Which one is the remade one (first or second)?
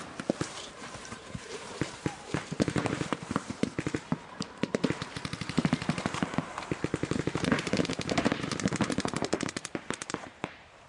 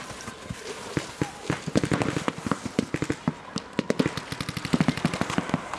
first